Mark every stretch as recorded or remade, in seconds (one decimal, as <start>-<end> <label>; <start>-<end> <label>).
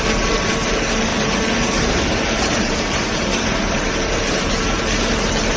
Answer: 0.0-5.6 remade